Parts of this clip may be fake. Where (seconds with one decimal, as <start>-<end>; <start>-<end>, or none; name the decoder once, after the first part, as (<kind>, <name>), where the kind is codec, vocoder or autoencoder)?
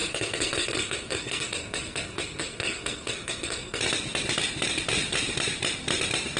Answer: 0.0-3.8 (codec, SNAC)